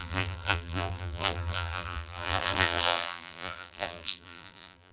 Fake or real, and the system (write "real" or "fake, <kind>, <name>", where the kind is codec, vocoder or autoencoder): fake, vocoder, BigVGAN v2